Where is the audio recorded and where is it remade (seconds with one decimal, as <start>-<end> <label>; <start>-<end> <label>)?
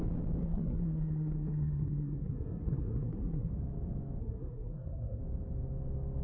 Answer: 0.0-0.4 recorded; 0.4-3.5 remade; 3.5-4.2 recorded; 4.2-5.2 remade; 5.2-6.2 recorded